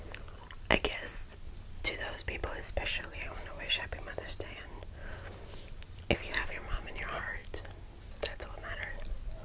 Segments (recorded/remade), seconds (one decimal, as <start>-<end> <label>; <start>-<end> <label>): 0.0-9.4 recorded